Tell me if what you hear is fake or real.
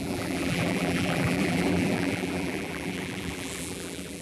fake